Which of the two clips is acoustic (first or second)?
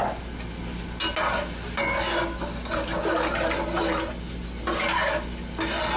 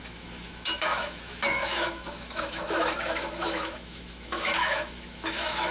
first